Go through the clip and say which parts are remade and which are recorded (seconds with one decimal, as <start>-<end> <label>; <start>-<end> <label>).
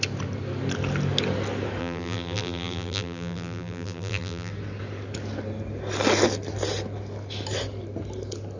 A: 0.0-1.8 recorded; 1.8-4.5 remade; 4.5-8.6 recorded